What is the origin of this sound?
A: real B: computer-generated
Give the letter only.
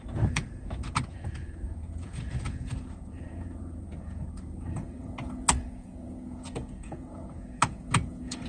B